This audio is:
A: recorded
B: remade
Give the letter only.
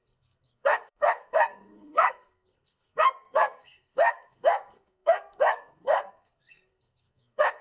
B